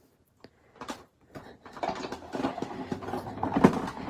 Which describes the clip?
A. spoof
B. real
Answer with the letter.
B